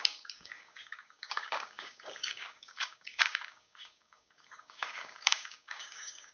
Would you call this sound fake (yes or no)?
yes